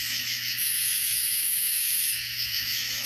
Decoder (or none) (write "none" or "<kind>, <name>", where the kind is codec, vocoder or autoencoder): autoencoder, DAC-VAE